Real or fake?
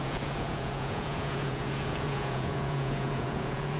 fake